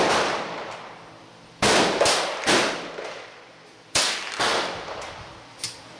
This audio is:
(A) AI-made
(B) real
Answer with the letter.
A